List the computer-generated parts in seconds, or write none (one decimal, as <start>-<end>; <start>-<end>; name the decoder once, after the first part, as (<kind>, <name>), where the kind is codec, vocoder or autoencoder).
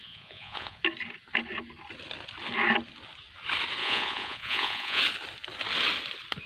0.0-0.8 (vocoder, Vocos); 3.8-5.0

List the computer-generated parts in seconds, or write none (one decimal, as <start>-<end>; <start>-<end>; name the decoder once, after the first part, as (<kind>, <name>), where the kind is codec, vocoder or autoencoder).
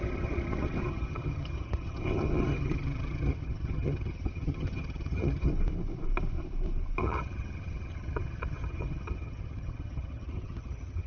0.0-5.5 (vocoder, HiFi-GAN); 7.0-11.1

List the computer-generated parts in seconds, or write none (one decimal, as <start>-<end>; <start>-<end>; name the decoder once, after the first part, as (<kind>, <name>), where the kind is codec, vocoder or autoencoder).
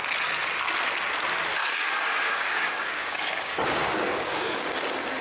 1.6-4.7 (codec, DAC)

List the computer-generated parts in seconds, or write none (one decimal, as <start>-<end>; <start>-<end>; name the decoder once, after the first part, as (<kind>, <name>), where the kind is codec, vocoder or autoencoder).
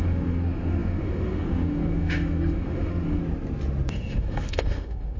0.0-3.2 (autoencoder, DAC-VAE); 3.9-5.2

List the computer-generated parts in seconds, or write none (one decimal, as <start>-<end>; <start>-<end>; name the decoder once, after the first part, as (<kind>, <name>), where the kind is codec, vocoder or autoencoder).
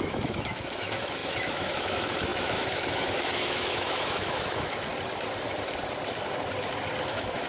0.0-4.9 (autoencoder, DAC-VAE); 7.0-7.5